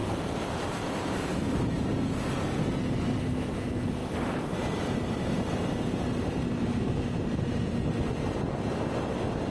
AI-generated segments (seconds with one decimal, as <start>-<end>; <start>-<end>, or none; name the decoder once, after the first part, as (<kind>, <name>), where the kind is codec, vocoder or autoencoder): 0.0-0.8 (vocoder, BigVGAN v2); 1.3-1.8; 4.0-7.6

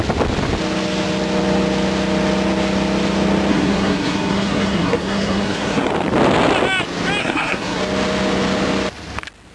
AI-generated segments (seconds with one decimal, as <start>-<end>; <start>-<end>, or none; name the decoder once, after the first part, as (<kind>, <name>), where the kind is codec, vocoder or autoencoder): 3.5-5.9 (codec, SNAC); 7.2-7.8

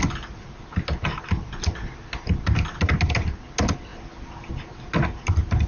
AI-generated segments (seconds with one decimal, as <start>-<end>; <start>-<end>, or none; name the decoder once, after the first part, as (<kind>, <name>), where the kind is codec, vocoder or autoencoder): none